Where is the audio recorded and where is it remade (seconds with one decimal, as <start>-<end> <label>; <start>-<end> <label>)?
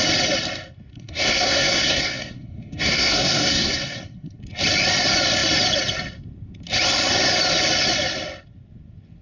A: 0.0-0.9 recorded; 0.9-4.4 remade; 4.4-9.2 recorded